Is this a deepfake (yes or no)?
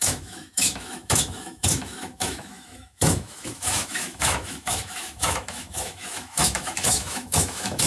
yes